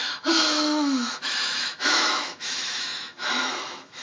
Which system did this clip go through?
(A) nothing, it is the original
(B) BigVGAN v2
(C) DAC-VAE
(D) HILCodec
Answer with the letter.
C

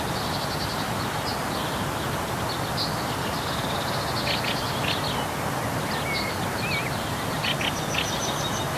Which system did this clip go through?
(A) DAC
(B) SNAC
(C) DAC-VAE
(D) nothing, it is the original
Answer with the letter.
D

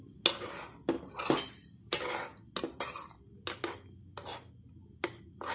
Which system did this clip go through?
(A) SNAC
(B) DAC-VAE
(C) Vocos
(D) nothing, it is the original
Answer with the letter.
D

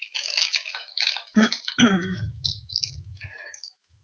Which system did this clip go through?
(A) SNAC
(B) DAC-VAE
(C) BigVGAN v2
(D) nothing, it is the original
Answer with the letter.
B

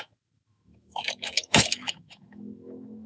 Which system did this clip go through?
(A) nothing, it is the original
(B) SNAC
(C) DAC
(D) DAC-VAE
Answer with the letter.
D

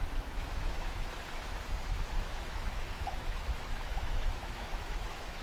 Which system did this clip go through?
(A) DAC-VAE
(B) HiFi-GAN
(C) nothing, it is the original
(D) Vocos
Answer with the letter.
A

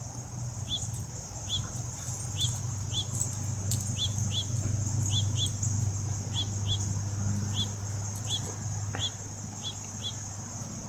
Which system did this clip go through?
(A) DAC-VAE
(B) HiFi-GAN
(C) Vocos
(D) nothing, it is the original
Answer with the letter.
D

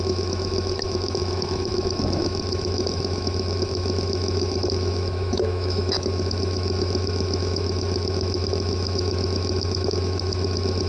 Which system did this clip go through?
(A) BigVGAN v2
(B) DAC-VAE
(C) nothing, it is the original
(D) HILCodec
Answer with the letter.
B